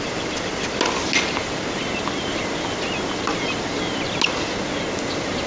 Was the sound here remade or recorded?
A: recorded